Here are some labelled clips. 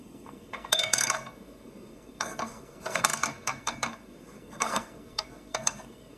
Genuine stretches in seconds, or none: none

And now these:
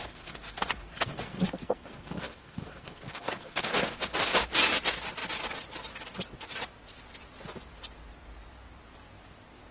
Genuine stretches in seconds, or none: 3.7-9.7

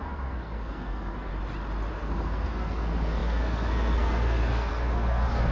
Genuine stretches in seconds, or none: 1.3-1.9

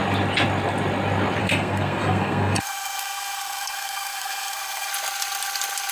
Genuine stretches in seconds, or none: 0.0-1.4; 4.9-5.9

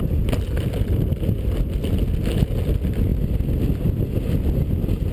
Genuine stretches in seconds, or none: 0.0-5.1

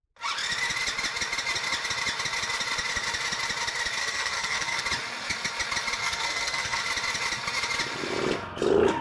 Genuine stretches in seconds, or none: 0.0-4.0; 4.8-6.0; 6.8-9.0